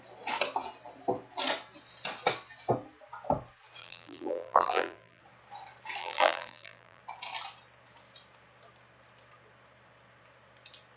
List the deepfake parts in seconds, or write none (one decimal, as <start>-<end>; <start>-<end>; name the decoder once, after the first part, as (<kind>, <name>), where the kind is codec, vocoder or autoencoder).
3.8-5.2 (vocoder, BigVGAN v2); 6.0-7.0